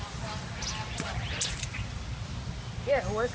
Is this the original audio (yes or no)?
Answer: yes